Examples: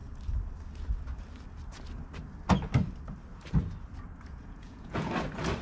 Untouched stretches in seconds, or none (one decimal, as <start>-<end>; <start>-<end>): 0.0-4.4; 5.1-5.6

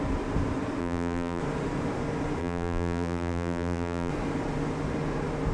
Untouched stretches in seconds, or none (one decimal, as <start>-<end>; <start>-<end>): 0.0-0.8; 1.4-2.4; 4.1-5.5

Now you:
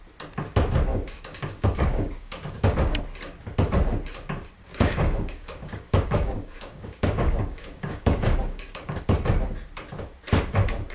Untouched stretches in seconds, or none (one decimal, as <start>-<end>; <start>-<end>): 0.0-0.9; 3.0-4.7; 9.0-10.9

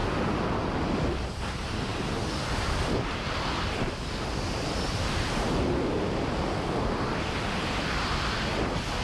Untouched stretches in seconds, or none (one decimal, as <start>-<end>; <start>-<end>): 0.0-9.0

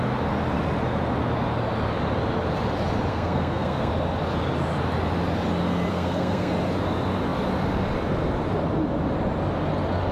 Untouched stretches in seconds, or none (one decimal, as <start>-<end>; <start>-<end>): 0.0-3.1; 3.9-5.9; 6.5-10.1

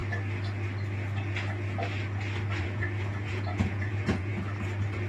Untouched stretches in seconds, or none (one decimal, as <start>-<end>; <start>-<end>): 0.0-2.6; 4.3-5.1

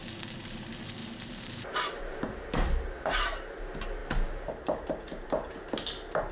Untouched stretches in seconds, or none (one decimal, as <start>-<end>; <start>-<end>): 0.0-1.0; 3.6-4.0; 5.6-6.3